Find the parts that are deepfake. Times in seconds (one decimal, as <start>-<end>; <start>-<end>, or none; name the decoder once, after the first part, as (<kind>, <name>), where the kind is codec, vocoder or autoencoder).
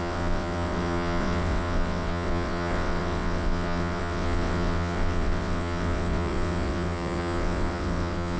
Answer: 0.0-8.4 (vocoder, WaveNeXt)